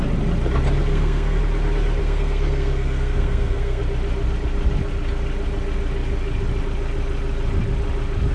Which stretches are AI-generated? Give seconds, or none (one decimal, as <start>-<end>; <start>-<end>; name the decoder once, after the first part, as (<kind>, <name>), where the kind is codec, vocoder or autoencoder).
0.9-1.4 (codec, SNAC); 2.0-3.8